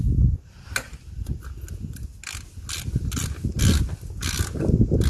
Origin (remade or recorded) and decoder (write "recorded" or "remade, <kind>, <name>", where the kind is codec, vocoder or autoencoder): recorded